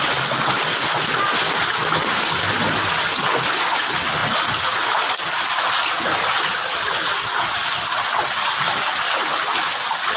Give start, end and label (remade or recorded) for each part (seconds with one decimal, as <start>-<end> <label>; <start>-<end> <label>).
0.0-10.2 recorded